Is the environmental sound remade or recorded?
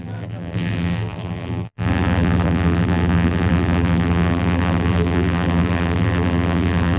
remade